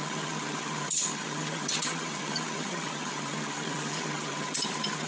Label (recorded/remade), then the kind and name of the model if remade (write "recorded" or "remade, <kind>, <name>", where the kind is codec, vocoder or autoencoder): remade, vocoder, HiFi-GAN